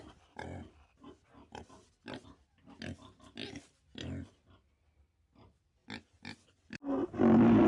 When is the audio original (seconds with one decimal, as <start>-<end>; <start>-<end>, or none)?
0.0-7.7